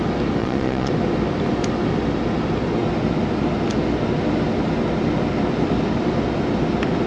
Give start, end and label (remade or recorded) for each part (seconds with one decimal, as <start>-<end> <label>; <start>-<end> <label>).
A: 0.0-0.4 recorded; 0.4-0.9 remade; 0.9-7.1 recorded